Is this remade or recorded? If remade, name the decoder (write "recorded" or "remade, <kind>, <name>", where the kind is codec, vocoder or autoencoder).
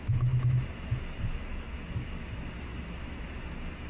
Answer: remade, autoencoder, DAC-VAE